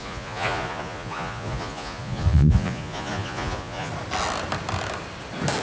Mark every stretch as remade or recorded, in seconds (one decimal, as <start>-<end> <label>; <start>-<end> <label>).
0.0-3.9 remade; 3.9-5.6 recorded